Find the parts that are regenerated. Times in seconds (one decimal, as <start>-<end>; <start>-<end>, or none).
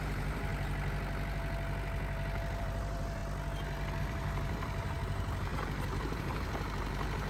0.0-0.5; 2.6-3.2; 4.0-7.3